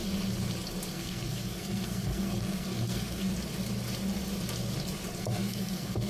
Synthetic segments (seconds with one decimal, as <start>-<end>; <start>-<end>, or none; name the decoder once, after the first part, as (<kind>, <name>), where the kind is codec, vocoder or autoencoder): 0.9-3.3 (codec, SNAC); 5.2-6.1